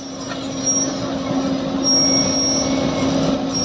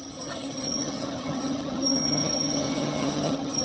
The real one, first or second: first